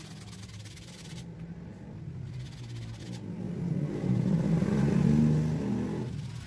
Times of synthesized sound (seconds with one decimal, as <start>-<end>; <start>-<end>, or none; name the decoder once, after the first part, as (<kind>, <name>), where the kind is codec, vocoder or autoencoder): none